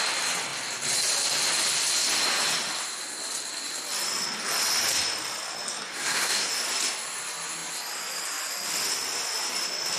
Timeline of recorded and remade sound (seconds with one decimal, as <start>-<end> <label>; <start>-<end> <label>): 0.0-5.9 recorded; 5.9-6.5 remade; 6.5-10.0 recorded